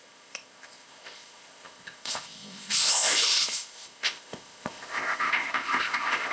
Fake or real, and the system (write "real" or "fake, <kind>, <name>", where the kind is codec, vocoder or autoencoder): fake, codec, ZipCodec